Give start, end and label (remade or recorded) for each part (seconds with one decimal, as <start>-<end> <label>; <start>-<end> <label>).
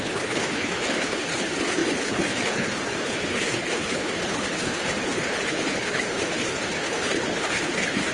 0.0-8.1 remade